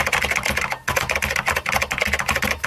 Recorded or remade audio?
recorded